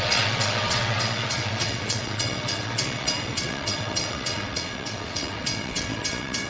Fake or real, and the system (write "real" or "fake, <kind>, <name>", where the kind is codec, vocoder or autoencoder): fake, vocoder, WaveNeXt